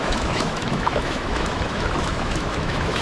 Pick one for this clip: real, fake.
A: fake